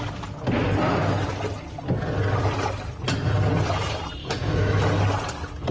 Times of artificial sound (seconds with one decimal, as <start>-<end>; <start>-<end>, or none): 4.2-4.8